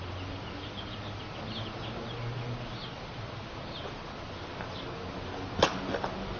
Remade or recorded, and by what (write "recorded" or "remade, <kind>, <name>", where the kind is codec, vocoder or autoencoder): recorded